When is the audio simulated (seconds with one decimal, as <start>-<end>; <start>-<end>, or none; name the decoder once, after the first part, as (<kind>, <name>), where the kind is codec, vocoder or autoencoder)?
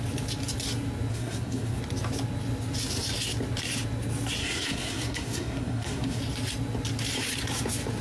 1.1-1.8 (codec, SNAC); 4.4-6.2